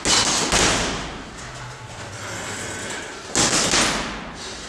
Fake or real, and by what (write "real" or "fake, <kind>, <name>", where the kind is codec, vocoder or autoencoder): real